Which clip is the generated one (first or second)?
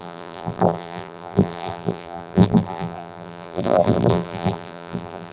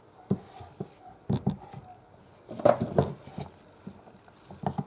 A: first